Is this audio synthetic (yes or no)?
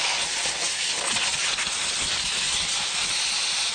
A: no